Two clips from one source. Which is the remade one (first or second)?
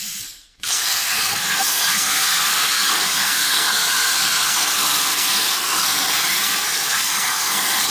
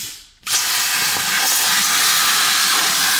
first